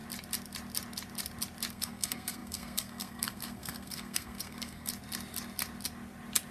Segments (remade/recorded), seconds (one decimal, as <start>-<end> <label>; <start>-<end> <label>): 0.0-1.7 recorded; 1.7-4.9 remade; 4.9-6.5 recorded